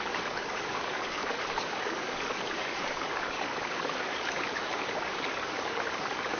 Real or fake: fake